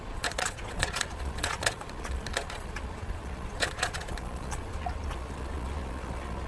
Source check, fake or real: fake